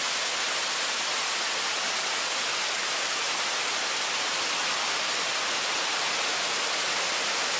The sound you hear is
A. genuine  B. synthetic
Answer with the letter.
A